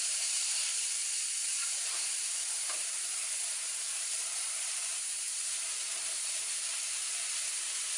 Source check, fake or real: fake